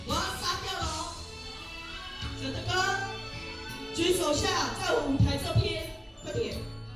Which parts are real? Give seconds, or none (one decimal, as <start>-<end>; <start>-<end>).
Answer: 1.0-3.0; 3.7-7.0